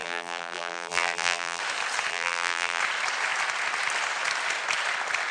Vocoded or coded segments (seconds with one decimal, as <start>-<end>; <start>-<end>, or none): 0.0-1.6; 2.1-2.8